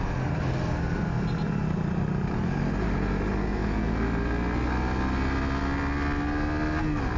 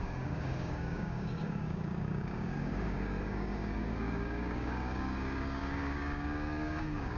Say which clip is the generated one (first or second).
second